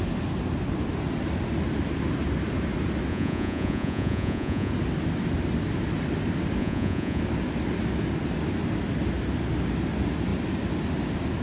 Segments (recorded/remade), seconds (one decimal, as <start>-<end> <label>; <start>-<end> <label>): 0.0-3.1 recorded; 3.1-4.7 remade; 4.7-6.6 recorded; 6.6-7.2 remade; 7.2-11.4 recorded

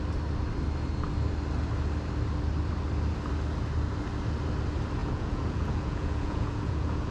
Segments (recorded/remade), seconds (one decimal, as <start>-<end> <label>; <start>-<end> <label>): 0.0-5.0 recorded; 5.0-7.1 remade

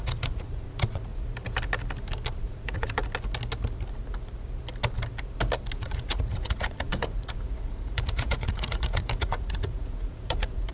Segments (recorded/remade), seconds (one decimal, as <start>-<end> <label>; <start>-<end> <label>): 0.0-1.1 remade; 1.1-2.3 recorded; 2.3-3.0 remade; 3.0-5.8 recorded; 5.8-10.7 remade

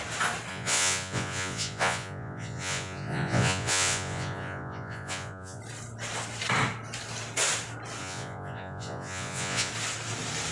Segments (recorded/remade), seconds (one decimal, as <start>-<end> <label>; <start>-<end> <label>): 0.0-0.5 recorded; 0.5-5.6 remade; 5.6-8.0 recorded; 8.0-9.7 remade; 9.7-10.5 recorded

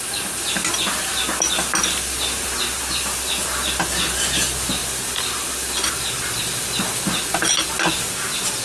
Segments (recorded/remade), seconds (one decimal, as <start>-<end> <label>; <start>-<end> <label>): 0.0-8.6 recorded